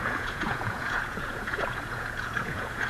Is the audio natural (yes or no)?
no